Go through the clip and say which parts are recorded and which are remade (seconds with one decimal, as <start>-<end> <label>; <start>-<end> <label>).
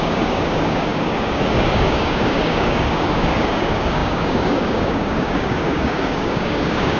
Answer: 0.0-7.0 remade